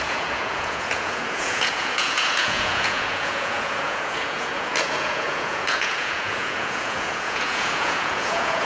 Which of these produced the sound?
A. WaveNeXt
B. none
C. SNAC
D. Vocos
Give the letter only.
D